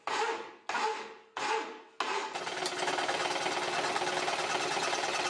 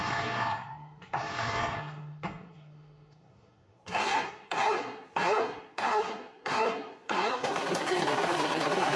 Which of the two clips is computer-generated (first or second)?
second